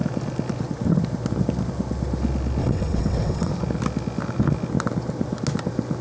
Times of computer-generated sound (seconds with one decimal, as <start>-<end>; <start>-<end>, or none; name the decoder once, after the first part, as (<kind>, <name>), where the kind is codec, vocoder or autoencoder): 2.6-3.5 (vocoder, WaveNeXt)

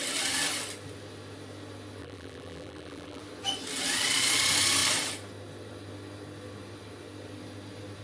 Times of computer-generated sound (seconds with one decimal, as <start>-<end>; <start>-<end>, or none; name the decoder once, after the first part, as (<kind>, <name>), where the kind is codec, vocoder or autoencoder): 2.0-3.2 (vocoder, BigVGAN v2)

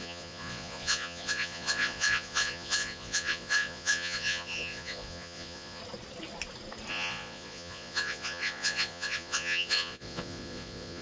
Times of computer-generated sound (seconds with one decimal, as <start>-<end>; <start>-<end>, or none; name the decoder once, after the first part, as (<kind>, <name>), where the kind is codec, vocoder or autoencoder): 0.0-5.8 (vocoder, Vocos); 6.9-11.0

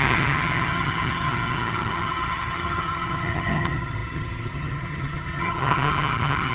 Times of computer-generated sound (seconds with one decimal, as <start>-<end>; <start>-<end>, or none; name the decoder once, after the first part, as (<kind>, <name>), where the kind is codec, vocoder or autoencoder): 0.0-6.5 (vocoder, HiFi-GAN)

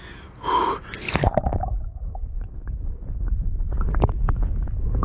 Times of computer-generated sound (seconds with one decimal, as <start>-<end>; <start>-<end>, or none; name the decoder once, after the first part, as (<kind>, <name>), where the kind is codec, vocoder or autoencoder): 1.2-3.9 (vocoder, BigVGAN v2)

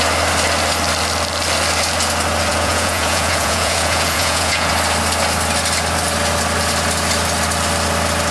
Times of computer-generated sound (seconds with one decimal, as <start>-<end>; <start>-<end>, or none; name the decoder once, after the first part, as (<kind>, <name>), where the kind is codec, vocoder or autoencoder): 2.5-4.7 (vocoder, Vocos)

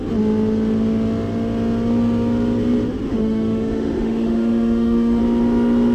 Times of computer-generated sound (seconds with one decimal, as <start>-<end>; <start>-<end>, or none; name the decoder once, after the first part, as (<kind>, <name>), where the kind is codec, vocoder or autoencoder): 3.1-5.2 (autoencoder, DAC-VAE)